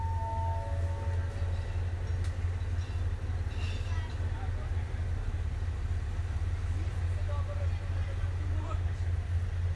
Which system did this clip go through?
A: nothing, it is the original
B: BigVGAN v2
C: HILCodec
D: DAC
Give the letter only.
A